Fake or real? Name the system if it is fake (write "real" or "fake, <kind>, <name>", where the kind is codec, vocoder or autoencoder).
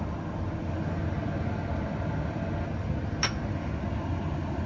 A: real